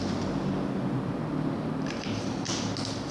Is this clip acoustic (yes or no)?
yes